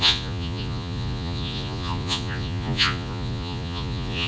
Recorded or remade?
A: remade